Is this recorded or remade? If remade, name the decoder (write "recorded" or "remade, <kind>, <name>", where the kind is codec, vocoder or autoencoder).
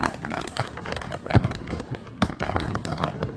remade, codec, SNAC